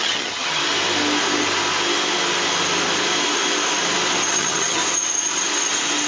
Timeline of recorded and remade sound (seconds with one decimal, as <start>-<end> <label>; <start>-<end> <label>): 0.0-0.6 remade; 0.6-4.3 recorded; 4.3-4.8 remade; 4.8-6.1 recorded